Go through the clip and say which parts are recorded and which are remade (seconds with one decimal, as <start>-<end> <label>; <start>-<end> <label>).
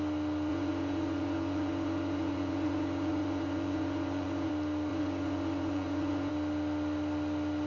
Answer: 0.0-0.5 recorded; 0.5-4.5 remade; 4.5-4.9 recorded; 4.9-6.3 remade; 6.3-7.7 recorded